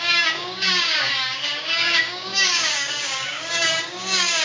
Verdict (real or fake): fake